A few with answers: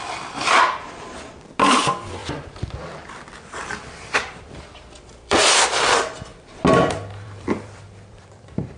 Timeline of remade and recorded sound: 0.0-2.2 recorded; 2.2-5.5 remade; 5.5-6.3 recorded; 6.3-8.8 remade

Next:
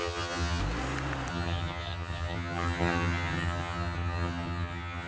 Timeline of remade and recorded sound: 0.0-0.6 remade; 0.6-1.3 recorded; 1.3-5.1 remade